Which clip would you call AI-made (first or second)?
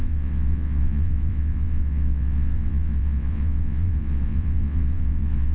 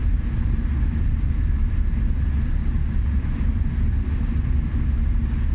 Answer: first